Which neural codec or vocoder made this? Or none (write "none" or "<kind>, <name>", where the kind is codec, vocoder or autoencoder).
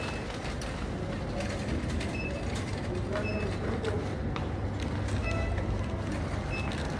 none